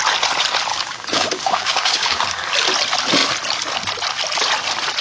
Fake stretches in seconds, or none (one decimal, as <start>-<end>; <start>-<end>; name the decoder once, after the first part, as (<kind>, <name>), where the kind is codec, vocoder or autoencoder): 0.7-2.5 (codec, DAC)

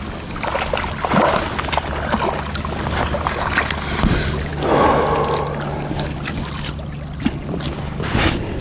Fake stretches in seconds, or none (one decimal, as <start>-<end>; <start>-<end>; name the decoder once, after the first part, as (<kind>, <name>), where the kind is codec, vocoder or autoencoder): none